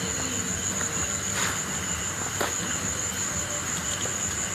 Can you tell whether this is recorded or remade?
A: recorded